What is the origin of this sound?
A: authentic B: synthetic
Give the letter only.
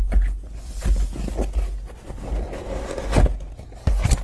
A